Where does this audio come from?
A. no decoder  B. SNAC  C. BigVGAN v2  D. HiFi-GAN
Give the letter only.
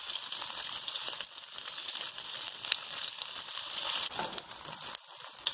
A